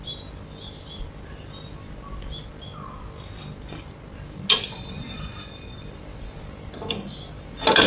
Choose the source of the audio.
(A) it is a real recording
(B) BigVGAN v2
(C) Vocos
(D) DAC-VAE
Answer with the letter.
A